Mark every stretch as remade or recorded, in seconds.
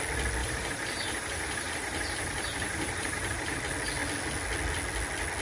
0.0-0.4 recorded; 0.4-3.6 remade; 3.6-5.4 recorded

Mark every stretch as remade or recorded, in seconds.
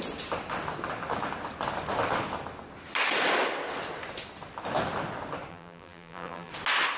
0.0-5.5 recorded; 5.5-6.5 remade; 6.5-7.0 recorded